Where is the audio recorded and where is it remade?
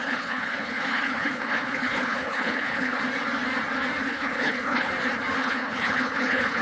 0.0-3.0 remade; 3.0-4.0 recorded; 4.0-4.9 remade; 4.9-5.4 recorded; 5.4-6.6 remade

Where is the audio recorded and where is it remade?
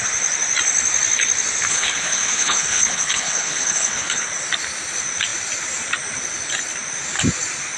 0.0-1.7 recorded; 1.7-4.3 remade; 4.3-7.8 recorded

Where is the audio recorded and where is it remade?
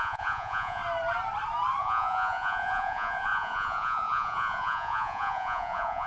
0.0-0.8 remade; 0.8-1.8 recorded; 1.8-6.1 remade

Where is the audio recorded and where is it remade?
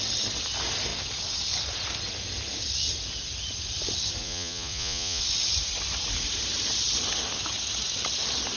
0.0-4.2 recorded; 4.2-5.2 remade; 5.2-8.6 recorded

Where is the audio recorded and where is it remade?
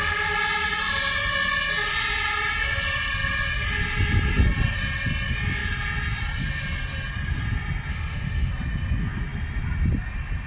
0.0-7.9 recorded; 7.9-8.5 remade; 8.5-10.5 recorded